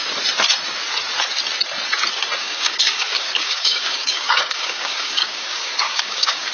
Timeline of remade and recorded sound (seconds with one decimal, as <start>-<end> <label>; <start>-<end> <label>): 0.0-2.4 recorded; 2.4-6.5 remade